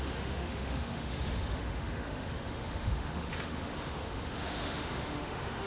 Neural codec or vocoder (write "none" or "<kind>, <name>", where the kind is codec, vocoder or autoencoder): autoencoder, DAC-VAE